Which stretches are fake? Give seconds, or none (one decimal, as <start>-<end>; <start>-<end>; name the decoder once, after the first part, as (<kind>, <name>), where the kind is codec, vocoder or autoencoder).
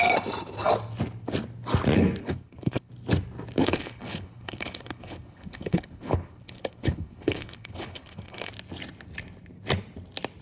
2.2-2.9 (codec, HILCodec); 3.6-8.5